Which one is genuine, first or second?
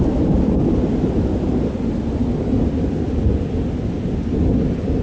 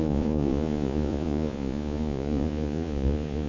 first